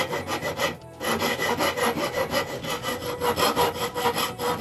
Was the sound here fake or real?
real